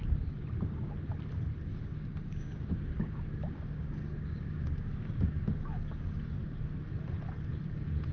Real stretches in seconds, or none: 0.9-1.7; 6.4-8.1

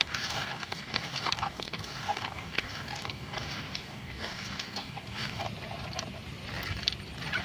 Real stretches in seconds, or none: 5.4-7.4

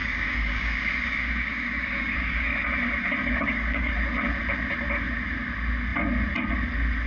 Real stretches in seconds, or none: 2.7-3.2; 3.9-7.1

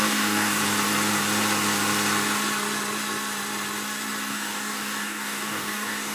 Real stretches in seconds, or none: 0.6-4.3

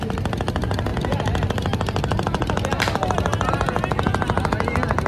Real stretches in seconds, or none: 0.0-5.1

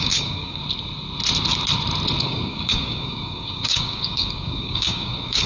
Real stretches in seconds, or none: 0.6-2.2

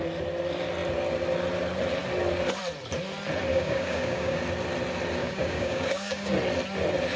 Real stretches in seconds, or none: 0.0-3.5; 4.4-5.2; 6.3-7.2